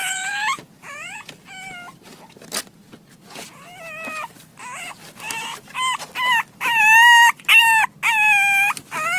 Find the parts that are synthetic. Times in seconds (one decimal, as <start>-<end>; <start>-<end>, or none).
0.0-1.3